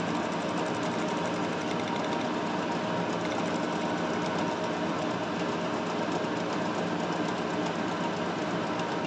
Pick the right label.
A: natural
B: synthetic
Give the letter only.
A